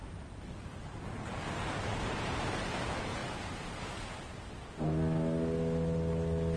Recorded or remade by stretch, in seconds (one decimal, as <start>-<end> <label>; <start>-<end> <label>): 0.0-6.6 recorded